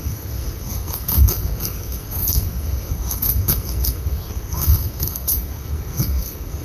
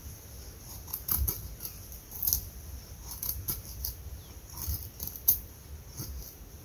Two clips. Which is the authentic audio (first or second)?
second